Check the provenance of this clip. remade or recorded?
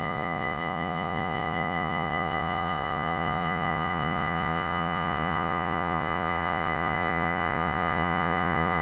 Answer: remade